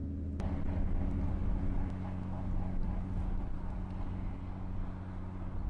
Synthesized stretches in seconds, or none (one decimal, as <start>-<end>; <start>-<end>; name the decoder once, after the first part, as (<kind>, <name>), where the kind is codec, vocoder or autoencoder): none